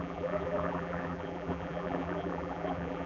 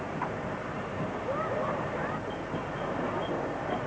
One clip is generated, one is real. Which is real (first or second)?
second